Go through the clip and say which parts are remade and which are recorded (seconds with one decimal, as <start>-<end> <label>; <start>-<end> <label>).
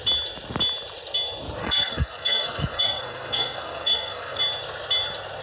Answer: 0.0-1.6 recorded; 1.6-4.4 remade; 4.4-5.4 recorded